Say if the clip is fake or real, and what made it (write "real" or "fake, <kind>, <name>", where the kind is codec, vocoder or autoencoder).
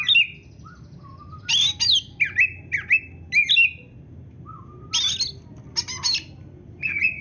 real